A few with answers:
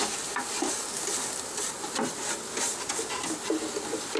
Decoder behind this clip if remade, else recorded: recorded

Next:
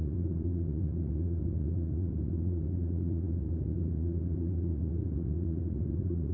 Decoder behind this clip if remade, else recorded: remade, vocoder, Vocos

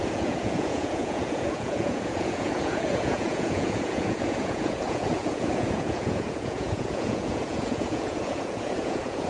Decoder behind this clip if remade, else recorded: remade, vocoder, Vocos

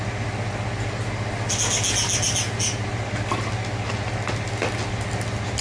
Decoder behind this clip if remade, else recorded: recorded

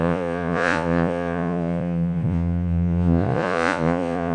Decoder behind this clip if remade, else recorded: remade, vocoder, Vocos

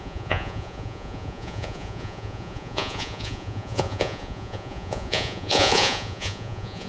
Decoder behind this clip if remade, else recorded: remade, vocoder, Vocos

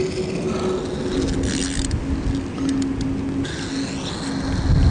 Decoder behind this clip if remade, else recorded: recorded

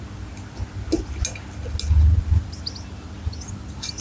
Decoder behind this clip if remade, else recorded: recorded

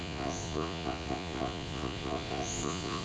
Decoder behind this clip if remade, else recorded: remade, vocoder, Vocos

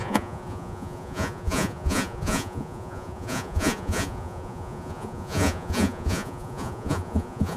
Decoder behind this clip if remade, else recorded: remade, vocoder, Vocos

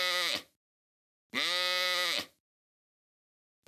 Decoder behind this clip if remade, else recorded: recorded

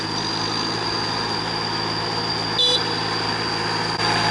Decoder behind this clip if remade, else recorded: recorded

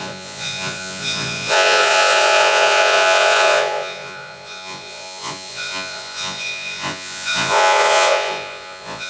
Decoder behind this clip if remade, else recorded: remade, vocoder, Vocos